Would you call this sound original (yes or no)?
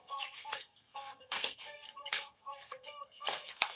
no